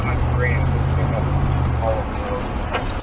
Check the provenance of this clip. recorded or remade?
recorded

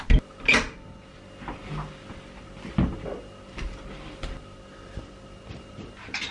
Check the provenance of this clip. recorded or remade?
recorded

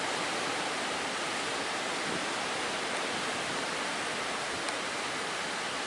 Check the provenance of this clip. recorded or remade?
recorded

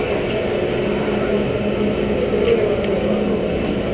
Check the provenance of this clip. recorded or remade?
recorded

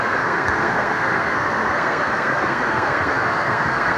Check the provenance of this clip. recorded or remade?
remade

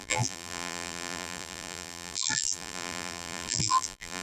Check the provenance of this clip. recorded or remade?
remade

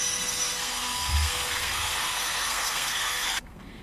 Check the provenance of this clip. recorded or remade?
remade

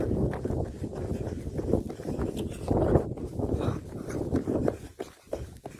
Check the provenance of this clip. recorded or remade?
recorded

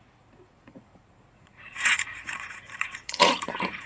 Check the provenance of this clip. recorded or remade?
remade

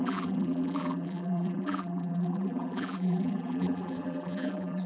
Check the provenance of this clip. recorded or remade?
remade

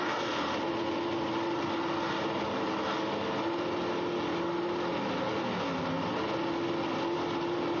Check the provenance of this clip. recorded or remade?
recorded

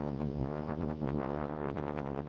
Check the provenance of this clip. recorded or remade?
remade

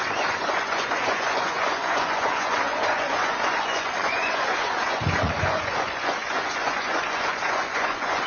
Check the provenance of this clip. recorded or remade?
remade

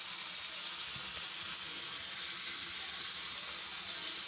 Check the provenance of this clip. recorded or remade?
recorded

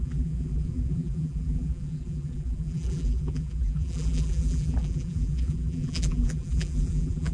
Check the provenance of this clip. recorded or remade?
remade